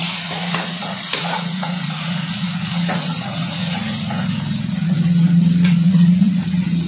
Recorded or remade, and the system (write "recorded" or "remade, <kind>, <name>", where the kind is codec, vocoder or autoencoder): remade, vocoder, Vocos